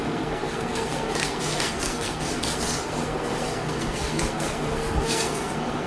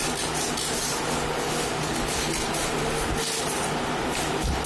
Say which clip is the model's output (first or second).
first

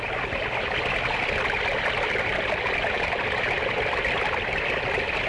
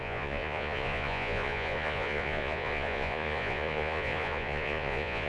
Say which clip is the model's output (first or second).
second